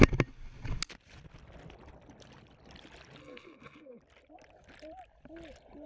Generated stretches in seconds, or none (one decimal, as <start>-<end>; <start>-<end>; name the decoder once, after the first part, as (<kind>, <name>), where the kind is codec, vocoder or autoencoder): 3.2-4.0 (codec, SNAC)